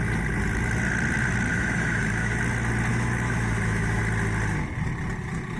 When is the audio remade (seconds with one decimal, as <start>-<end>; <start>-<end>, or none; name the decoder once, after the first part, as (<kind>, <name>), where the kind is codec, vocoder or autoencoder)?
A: 1.5-2.4 (autoencoder, DAC-VAE); 2.9-4.0